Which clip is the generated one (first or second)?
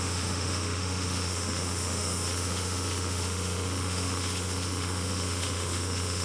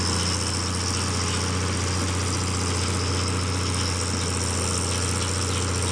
first